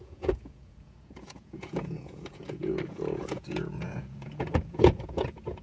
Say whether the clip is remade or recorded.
remade